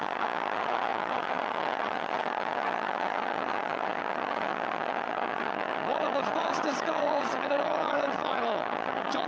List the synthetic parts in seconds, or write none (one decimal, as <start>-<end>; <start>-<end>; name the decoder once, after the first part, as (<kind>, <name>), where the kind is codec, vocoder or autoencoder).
0.0-9.3 (vocoder, HiFi-GAN)